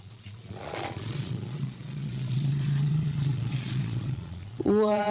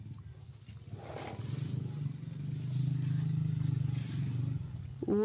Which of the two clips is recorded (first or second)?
second